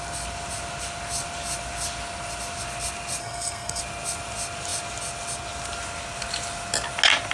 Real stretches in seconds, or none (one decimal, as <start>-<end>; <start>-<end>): 0.0-3.2; 3.8-7.3